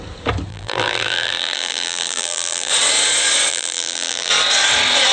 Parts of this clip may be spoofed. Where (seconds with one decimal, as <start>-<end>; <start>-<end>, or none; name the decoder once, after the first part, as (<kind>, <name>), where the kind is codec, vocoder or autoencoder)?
0.5-2.7 (vocoder, BigVGAN v2); 3.5-4.3